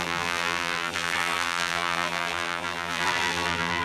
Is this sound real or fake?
fake